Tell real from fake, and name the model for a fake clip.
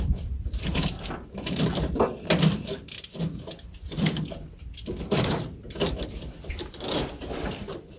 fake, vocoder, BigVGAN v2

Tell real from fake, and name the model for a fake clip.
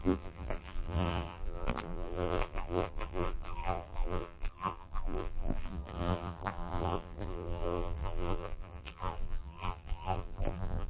fake, vocoder, BigVGAN v2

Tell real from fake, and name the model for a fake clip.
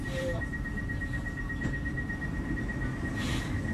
fake, vocoder, BigVGAN v2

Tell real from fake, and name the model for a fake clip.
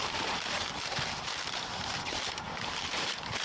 fake, vocoder, BigVGAN v2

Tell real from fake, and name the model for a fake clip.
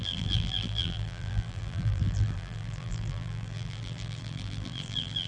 fake, vocoder, BigVGAN v2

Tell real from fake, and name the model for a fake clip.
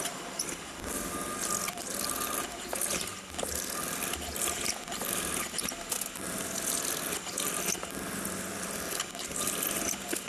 real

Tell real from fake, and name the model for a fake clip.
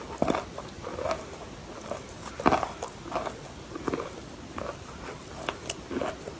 real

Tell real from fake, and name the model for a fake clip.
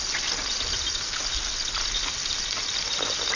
real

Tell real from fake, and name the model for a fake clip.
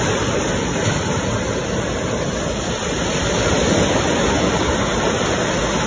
fake, vocoder, BigVGAN v2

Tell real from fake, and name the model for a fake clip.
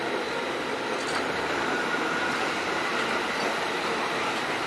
fake, vocoder, BigVGAN v2